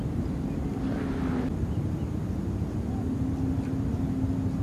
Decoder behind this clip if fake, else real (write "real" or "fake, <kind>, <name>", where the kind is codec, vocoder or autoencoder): real